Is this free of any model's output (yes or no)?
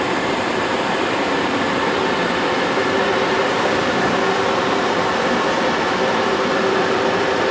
no